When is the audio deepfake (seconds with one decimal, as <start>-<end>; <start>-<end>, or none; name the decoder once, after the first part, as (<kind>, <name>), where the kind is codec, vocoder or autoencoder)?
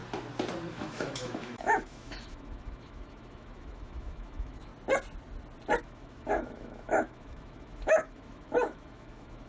0.7-4.7 (autoencoder, DAC-VAE); 5.8-9.5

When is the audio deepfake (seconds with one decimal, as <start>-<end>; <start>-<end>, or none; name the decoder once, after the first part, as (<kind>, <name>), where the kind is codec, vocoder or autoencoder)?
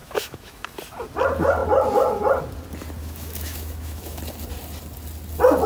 0.0-0.7 (autoencoder, DAC-VAE); 3.0-4.2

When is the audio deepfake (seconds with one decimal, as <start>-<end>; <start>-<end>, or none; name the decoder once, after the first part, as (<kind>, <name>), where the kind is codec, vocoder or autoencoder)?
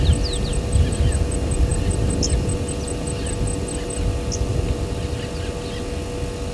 none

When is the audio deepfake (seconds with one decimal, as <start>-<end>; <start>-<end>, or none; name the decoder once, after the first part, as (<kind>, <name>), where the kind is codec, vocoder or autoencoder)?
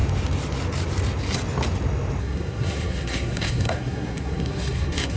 2.2-5.2 (codec, SNAC)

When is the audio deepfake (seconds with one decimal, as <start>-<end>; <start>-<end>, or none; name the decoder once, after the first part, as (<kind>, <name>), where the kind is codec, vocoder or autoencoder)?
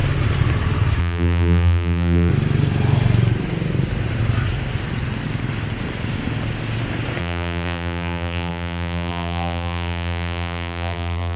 1.0-2.3 (vocoder, BigVGAN v2); 7.2-11.4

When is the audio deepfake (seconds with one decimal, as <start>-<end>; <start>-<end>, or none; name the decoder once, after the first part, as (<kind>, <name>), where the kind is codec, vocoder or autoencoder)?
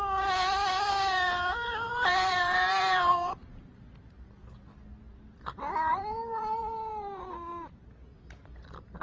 1.9-3.8 (vocoder, BigVGAN v2); 5.9-7.3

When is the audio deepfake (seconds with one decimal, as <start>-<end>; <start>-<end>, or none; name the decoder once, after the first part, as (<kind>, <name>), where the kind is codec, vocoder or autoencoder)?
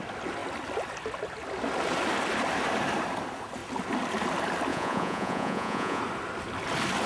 4.7-6.0 (vocoder, Vocos)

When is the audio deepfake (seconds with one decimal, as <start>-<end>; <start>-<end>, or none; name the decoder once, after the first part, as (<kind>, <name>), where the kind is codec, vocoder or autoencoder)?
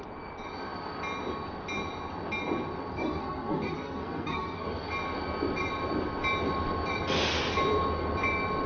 2.9-4.9 (codec, SNAC)